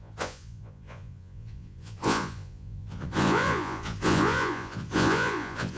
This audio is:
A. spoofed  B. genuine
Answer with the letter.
A